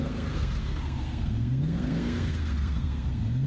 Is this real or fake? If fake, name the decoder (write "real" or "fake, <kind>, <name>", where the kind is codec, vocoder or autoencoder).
fake, codec, SNAC